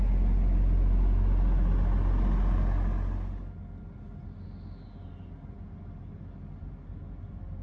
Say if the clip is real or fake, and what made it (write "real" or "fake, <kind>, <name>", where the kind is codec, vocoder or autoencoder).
real